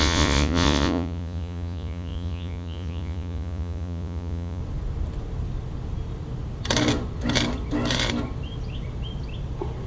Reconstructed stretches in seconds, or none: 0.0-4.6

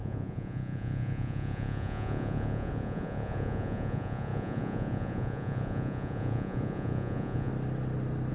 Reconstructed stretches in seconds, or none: 0.0-7.5

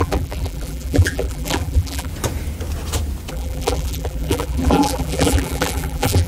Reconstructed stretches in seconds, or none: 0.0-2.1; 3.3-6.3

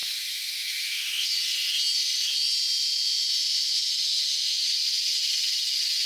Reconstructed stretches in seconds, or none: 0.0-1.3

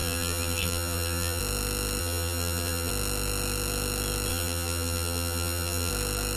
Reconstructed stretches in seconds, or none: 0.0-1.4; 2.0-2.9; 4.3-5.9